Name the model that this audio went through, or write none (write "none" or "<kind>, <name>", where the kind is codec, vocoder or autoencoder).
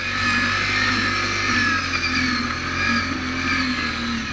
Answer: none